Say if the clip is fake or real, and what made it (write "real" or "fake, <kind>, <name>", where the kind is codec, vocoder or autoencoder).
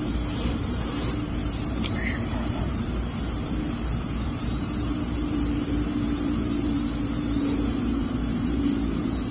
fake, vocoder, BigVGAN v2